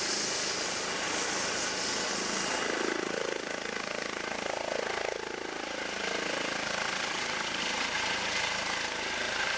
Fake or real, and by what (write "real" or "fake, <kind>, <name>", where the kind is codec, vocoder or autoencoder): real